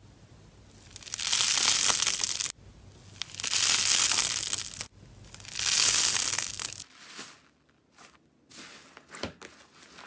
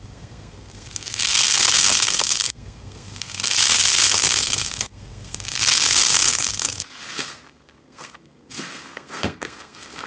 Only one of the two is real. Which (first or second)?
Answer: first